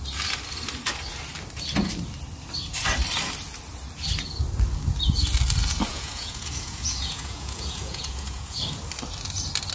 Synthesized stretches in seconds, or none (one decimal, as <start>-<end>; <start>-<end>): 5.9-8.6